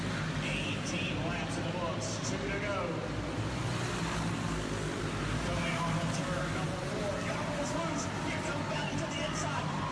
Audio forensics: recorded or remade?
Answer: recorded